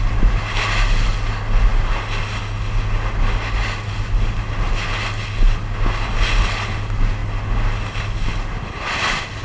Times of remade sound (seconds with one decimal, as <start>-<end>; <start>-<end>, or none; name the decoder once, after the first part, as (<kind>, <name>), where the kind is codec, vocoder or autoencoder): none